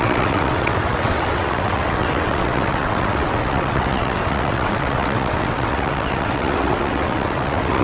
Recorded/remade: remade